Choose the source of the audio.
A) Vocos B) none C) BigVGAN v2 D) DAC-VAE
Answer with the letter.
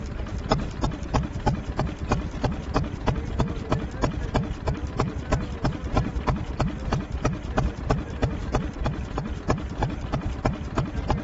B